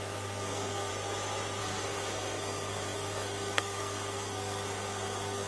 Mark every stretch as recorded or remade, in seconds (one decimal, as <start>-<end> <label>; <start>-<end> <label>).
0.0-0.9 remade; 0.9-1.6 recorded; 1.6-5.5 remade